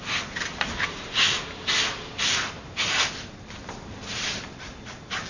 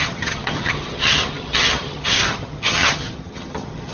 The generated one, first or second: second